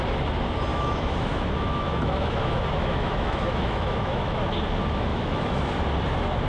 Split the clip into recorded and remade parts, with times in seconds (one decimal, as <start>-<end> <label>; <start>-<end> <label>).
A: 0.0-0.7 recorded; 0.7-4.4 remade; 4.4-5.1 recorded; 5.1-5.7 remade; 5.7-6.5 recorded